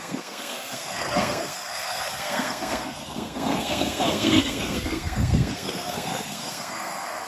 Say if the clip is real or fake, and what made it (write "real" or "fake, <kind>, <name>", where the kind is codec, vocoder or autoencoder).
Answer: fake, codec, SNAC